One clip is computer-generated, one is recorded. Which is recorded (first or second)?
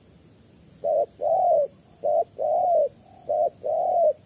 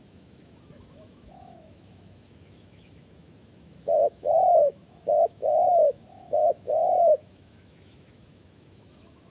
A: first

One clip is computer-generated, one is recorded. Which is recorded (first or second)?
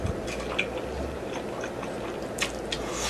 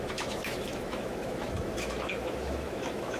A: first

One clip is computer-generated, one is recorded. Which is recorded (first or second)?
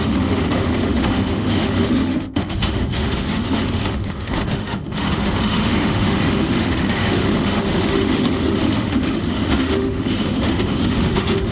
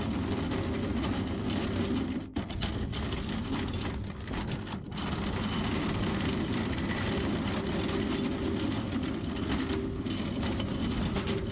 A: second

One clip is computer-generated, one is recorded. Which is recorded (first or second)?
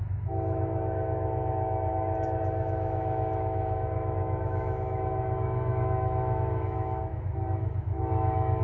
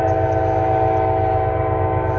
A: second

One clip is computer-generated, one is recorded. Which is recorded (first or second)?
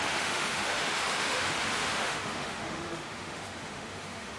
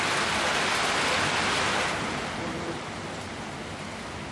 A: second